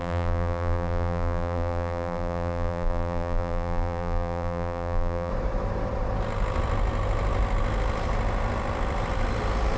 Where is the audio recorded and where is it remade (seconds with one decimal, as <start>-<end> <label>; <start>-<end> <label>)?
0.0-5.3 remade; 5.3-9.8 recorded